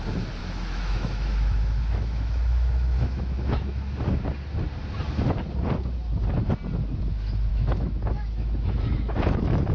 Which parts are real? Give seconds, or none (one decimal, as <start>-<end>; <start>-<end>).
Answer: 0.0-0.4; 3.8-7.5